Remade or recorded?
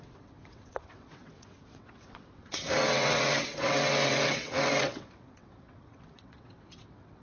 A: remade